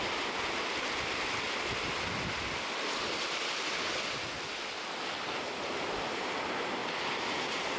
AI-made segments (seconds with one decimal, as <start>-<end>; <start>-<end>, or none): none